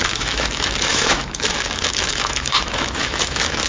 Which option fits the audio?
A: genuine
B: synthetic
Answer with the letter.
B